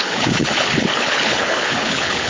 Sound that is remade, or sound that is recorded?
remade